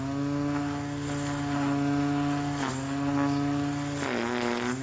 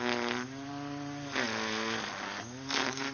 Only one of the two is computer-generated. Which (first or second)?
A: second